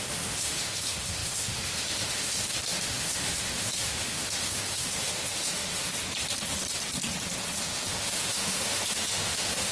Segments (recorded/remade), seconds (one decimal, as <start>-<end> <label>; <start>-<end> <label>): 0.0-5.9 remade; 5.9-7.6 recorded; 7.6-9.7 remade